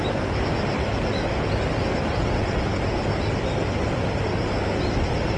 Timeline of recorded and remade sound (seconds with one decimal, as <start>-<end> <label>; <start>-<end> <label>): 0.0-5.4 recorded